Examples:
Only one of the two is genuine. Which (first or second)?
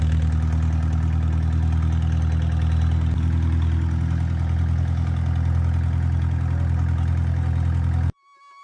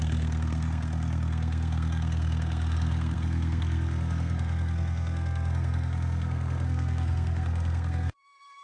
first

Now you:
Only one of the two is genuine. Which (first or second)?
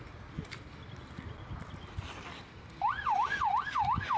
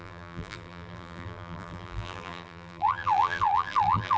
first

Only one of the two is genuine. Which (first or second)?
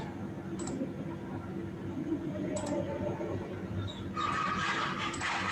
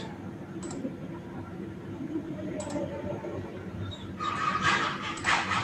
first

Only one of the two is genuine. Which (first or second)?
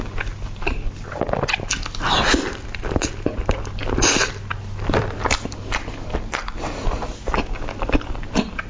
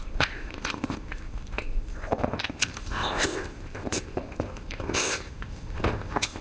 first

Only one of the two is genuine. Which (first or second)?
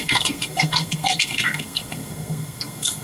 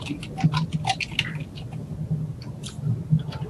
second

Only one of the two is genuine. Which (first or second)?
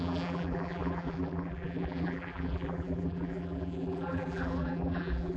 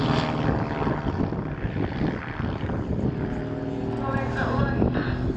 second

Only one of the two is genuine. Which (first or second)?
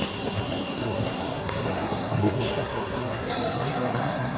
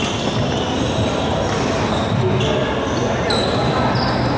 second